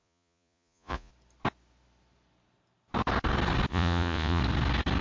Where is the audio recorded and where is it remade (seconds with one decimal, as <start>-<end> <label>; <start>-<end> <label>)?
0.0-1.1 remade; 1.1-3.7 recorded; 3.7-4.4 remade; 4.4-5.0 recorded